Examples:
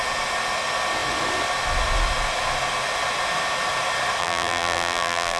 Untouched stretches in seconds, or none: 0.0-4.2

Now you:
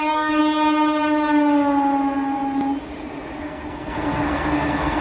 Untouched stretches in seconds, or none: 0.4-3.4

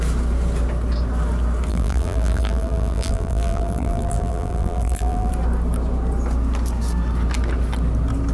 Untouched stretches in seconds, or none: 0.0-1.7; 5.3-8.3

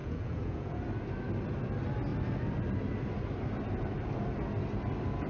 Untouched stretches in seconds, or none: 0.8-5.3